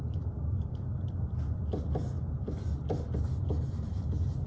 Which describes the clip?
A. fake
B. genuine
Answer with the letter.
B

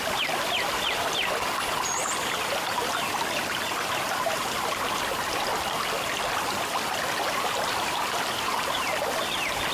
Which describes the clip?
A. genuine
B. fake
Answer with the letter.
A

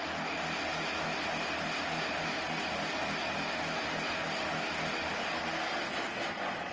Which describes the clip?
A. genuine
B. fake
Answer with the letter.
A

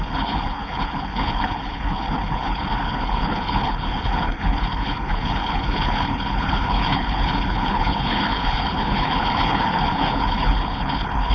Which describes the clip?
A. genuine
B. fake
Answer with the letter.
B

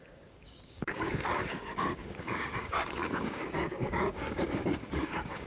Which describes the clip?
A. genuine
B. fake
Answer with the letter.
B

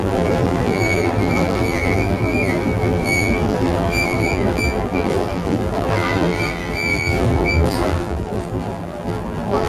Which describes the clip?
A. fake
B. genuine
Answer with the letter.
A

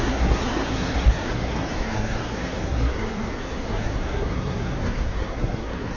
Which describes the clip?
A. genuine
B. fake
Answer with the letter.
B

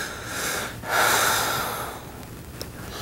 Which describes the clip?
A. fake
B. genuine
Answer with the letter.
B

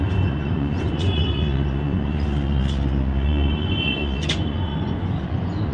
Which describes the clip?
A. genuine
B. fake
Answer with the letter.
B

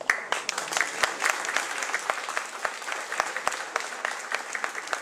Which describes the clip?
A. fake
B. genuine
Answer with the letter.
B